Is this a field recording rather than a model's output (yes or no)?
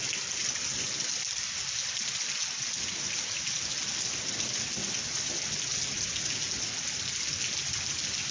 yes